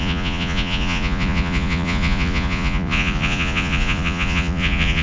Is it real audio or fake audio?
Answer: fake